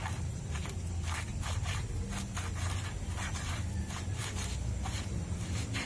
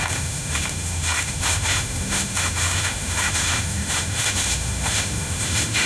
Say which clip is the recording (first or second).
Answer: first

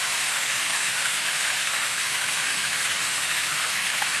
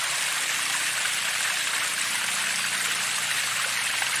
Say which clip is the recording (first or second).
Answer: second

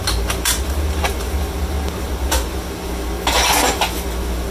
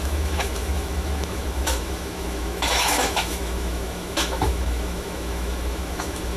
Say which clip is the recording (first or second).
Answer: first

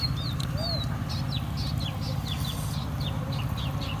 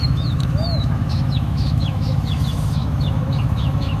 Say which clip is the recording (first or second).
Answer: first